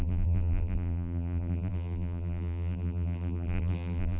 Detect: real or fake fake